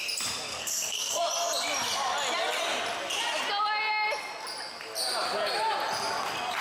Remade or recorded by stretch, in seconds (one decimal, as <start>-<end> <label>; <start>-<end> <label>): 0.0-0.5 recorded; 0.5-1.2 remade; 1.2-6.6 recorded